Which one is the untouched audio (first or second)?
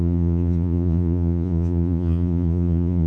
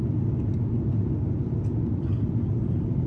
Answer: second